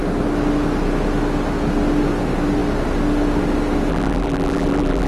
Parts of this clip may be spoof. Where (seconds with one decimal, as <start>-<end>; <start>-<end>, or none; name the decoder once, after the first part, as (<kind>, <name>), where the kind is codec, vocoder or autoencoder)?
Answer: 3.9-5.1 (vocoder, BigVGAN v2)